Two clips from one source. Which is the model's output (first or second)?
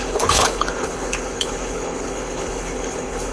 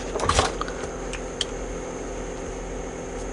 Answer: first